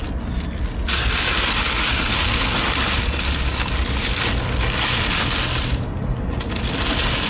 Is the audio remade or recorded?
recorded